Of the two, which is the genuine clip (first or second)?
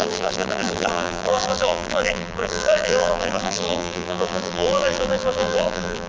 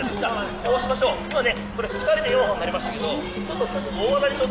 second